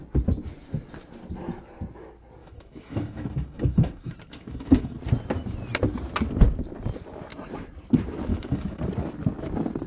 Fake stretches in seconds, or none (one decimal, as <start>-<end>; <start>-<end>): 2.4-5.0; 8.3-8.8